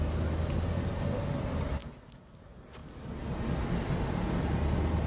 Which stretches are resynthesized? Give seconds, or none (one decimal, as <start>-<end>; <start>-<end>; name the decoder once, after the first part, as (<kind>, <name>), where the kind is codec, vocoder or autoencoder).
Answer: none